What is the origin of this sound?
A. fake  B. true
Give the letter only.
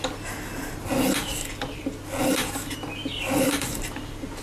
B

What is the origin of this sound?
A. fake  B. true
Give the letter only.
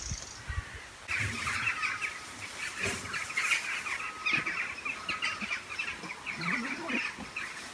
B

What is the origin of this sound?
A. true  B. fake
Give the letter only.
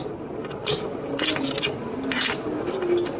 A